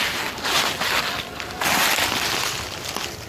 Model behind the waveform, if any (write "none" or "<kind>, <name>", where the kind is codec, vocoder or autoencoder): none